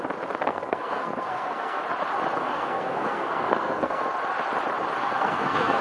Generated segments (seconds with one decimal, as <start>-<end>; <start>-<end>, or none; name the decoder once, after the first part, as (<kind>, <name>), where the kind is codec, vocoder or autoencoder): 0.5-1.8 (codec, SNAC); 2.4-4.0; 5.0-5.8